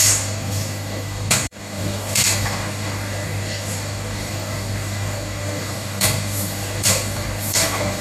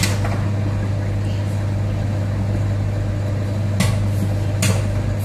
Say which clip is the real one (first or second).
second